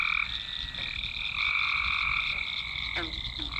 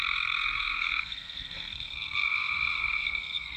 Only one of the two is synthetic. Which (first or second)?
second